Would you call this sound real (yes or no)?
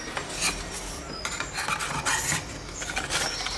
yes